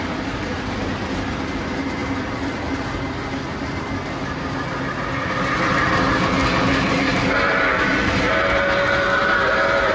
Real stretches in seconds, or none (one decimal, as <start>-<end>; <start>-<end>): 0.0-9.9